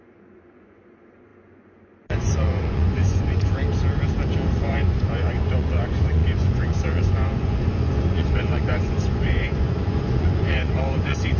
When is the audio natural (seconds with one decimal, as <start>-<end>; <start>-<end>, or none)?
3.6-4.5